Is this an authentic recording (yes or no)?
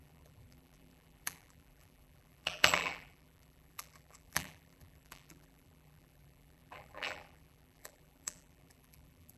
no